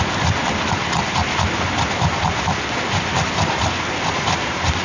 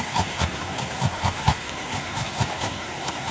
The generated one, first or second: second